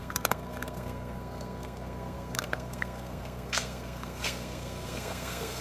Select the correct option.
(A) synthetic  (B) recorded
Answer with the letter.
A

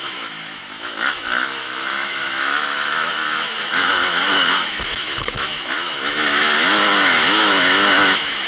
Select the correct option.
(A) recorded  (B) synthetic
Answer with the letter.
B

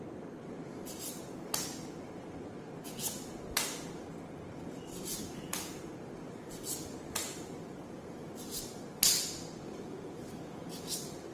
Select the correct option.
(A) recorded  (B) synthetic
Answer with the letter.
A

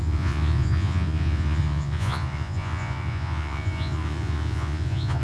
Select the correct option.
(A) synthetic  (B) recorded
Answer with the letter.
A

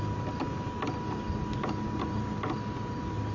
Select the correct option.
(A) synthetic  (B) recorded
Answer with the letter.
B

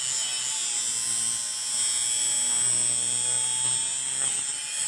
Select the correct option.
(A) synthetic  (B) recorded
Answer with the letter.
B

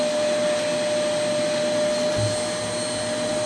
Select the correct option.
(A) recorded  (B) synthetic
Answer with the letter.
A